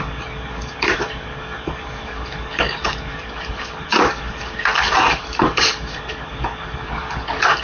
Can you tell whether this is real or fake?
fake